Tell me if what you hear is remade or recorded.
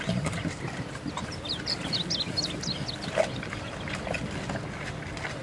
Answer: recorded